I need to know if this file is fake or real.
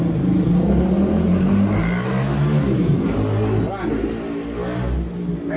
real